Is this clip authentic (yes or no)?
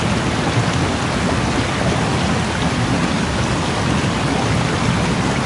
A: yes